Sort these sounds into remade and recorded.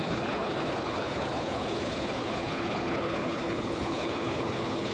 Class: remade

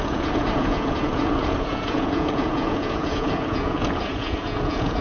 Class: remade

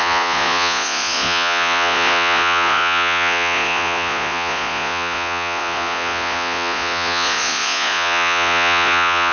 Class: remade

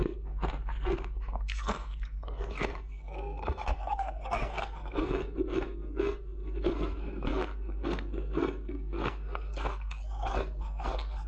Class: remade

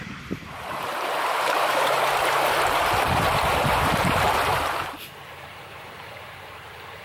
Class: remade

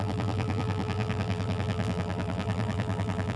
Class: remade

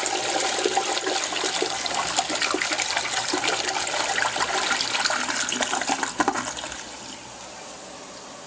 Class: recorded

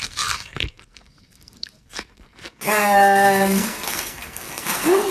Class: remade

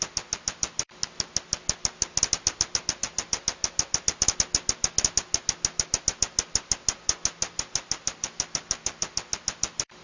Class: recorded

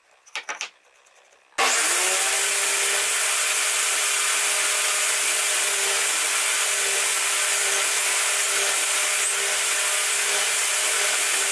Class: recorded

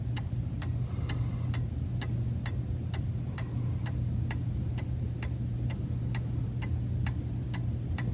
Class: recorded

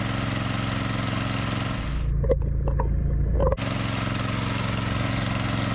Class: recorded